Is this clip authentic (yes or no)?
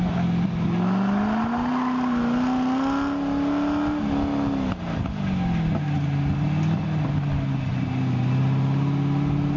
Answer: yes